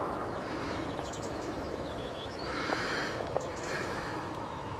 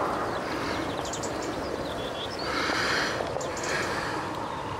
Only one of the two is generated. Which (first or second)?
first